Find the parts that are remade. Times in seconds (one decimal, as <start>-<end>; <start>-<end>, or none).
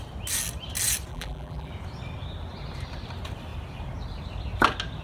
1.1-1.7